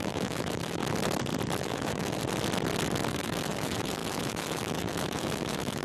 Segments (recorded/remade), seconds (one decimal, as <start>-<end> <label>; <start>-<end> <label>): 0.0-0.8 remade; 0.8-1.6 recorded; 1.6-2.2 remade; 2.2-3.1 recorded; 3.1-5.8 remade